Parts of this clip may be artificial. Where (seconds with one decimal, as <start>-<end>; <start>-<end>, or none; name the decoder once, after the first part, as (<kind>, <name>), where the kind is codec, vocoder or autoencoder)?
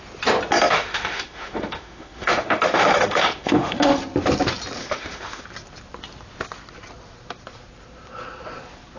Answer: 0.7-4.0 (autoencoder, DAC-VAE); 4.8-5.4